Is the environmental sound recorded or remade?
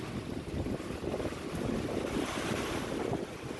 recorded